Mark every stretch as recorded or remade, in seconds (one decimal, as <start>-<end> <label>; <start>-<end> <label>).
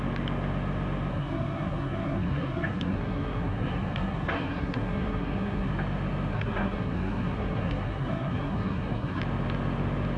0.0-1.1 recorded; 1.1-5.7 remade; 5.7-6.3 recorded; 6.3-9.2 remade; 9.2-10.2 recorded